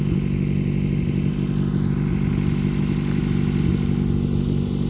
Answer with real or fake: real